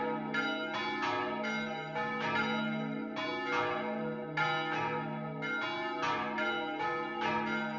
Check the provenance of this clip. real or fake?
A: real